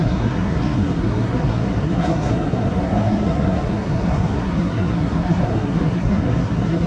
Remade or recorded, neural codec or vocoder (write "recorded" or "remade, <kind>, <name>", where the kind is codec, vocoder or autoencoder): remade, codec, SNAC